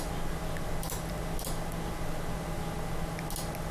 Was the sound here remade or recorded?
recorded